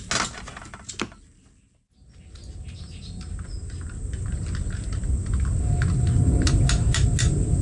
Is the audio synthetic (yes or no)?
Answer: no